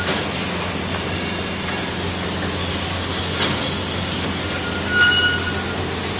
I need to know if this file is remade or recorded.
recorded